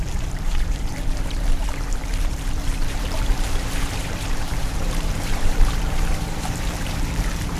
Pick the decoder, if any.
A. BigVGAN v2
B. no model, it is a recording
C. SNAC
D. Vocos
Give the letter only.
A